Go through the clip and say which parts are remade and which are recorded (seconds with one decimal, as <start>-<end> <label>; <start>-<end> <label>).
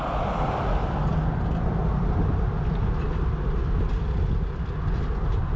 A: 0.0-5.6 recorded